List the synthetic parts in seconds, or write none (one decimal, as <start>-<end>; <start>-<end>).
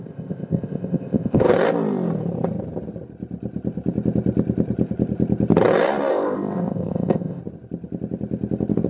0.0-1.5; 6.1-7.4